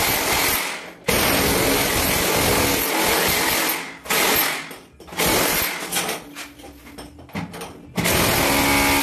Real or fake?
real